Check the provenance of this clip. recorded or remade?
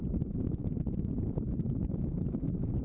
remade